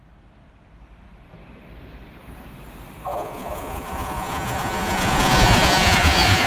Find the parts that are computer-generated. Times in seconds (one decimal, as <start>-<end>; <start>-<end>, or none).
3.1-6.5